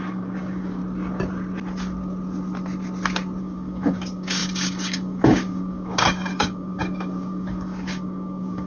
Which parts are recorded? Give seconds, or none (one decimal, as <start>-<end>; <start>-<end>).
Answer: 0.8-3.4